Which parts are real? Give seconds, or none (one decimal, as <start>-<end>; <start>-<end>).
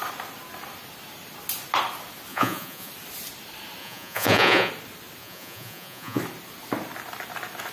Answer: 0.0-2.3; 2.9-3.8; 4.7-5.2; 6.2-7.7